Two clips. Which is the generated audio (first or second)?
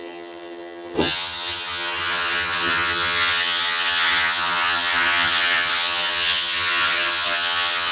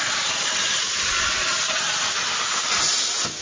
first